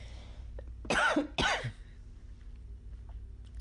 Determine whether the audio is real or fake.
real